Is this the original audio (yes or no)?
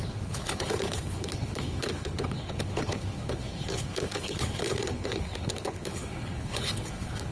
no